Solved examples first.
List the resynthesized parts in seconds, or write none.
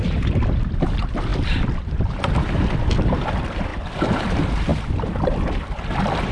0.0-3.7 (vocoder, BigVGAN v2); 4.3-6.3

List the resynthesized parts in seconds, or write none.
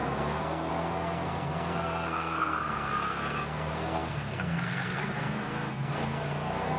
0.0-6.8 (codec, SNAC)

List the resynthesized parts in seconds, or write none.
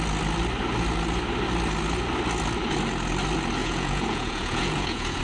3.6-5.2 (vocoder, Vocos)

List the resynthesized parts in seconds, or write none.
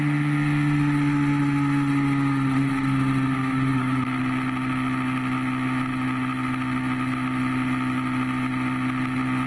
3.4-4.2 (autoencoder, DAC-VAE)